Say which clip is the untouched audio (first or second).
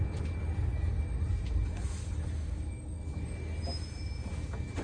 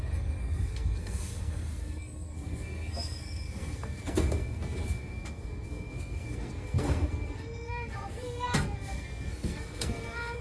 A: first